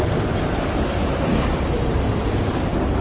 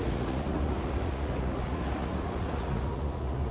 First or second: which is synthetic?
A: second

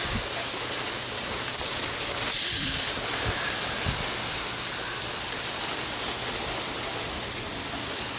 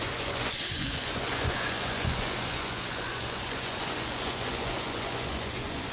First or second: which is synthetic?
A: second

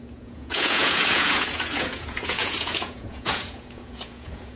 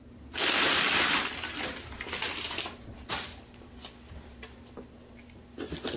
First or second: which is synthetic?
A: first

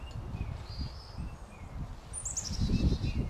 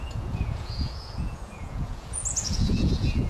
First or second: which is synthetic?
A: second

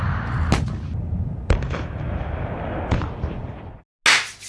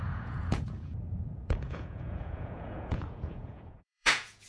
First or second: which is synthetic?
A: second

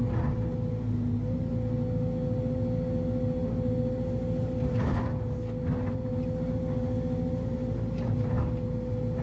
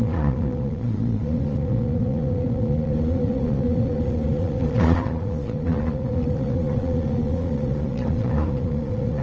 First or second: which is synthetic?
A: second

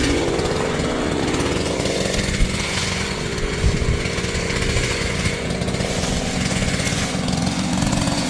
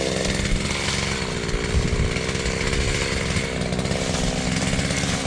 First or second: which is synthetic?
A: first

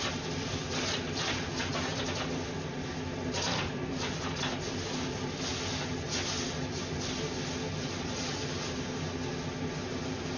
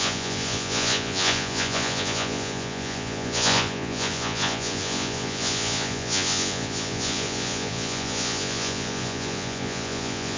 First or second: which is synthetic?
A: second